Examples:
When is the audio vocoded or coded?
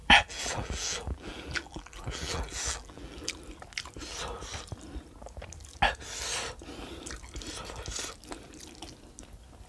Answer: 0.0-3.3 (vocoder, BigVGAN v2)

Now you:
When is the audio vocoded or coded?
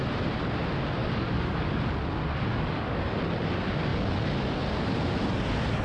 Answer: 1.0-1.8 (codec, DAC); 2.5-3.2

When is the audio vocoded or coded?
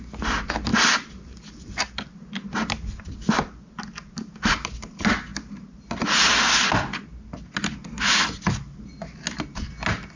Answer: 0.7-2.0 (vocoder, BigVGAN v2)